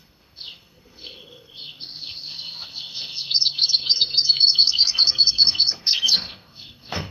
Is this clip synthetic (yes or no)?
yes